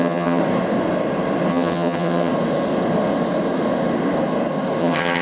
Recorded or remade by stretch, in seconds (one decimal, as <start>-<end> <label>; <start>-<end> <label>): 0.0-0.4 remade; 0.4-1.5 recorded; 1.5-2.3 remade; 2.3-4.8 recorded; 4.8-5.2 remade